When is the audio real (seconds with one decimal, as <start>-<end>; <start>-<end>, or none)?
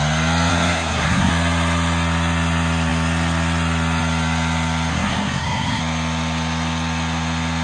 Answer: 0.0-0.5; 1.3-4.9; 5.8-7.6